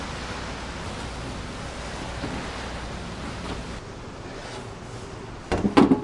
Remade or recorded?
recorded